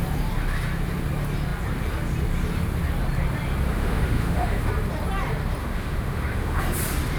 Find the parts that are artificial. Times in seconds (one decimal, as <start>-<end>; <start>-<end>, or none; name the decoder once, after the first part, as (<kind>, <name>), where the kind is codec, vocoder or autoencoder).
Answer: 3.7-4.7 (autoencoder, DAC-VAE); 5.6-6.6